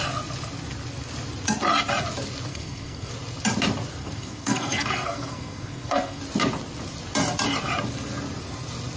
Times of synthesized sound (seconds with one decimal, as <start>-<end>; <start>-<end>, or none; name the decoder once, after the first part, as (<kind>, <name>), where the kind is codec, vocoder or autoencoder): 2.5-3.1 (codec, SNAC); 4.0-6.2